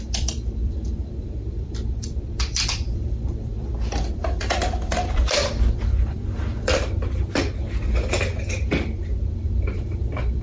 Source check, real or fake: fake